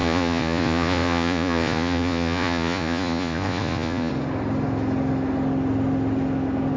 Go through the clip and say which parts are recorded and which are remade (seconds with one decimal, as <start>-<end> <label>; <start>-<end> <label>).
0.0-4.1 remade; 4.1-6.8 recorded